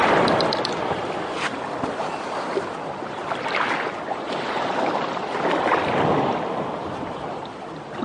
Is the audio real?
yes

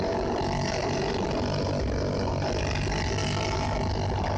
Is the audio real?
yes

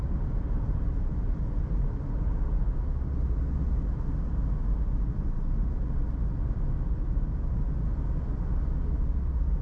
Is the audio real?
yes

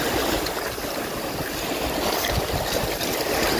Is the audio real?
yes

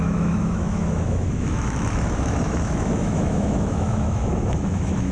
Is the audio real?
no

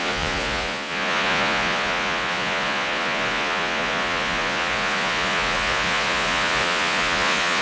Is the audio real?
no